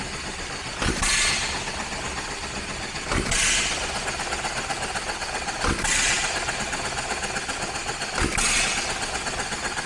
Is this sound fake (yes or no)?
no